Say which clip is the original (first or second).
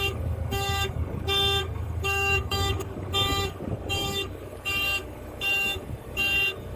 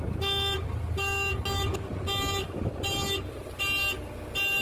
second